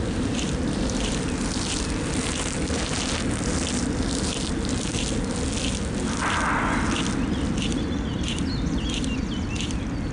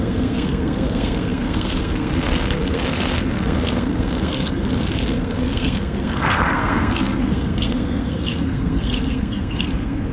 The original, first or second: first